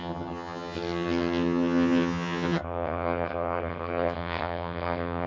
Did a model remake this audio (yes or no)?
yes